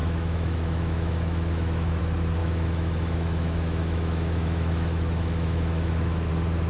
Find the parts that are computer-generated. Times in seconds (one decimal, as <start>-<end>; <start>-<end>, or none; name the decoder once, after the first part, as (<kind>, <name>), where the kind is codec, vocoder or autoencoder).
0.0-2.0 (autoencoder, DAC-VAE); 2.4-6.3